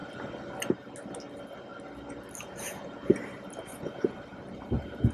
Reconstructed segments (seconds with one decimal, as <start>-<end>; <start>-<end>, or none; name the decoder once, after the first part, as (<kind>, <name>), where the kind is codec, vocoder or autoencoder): none